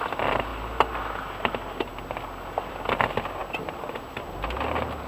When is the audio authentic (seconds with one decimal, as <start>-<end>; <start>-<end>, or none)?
0.0-5.1